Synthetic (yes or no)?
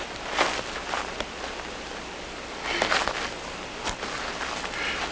no